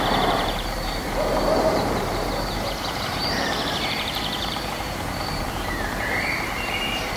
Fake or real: fake